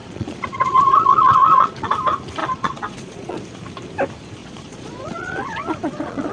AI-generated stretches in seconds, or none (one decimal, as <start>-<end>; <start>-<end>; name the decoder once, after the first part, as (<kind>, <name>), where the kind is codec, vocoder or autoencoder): 0.0-1.9 (vocoder, Vocos); 2.4-3.4; 4.4-6.3